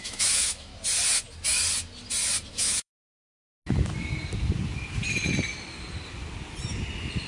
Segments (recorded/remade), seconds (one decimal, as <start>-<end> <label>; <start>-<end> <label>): 0.0-0.7 remade; 0.7-2.5 recorded; 2.5-2.9 remade; 2.9-7.3 recorded